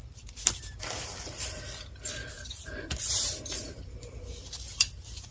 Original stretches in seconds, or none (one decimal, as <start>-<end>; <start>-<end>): 0.0-2.2; 3.0-5.3